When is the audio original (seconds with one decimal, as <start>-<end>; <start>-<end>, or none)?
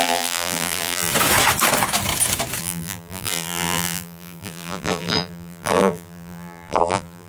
1.1-2.6